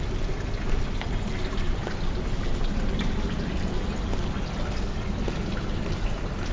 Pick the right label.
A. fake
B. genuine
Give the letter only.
B